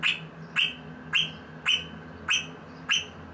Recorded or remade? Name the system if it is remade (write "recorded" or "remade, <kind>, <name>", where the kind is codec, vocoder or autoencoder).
recorded